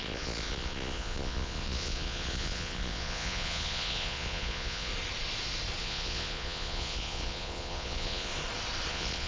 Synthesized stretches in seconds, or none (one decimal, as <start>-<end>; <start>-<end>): 0.0-4.9; 5.8-8.3; 8.9-9.3